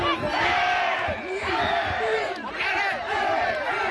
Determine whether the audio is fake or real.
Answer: fake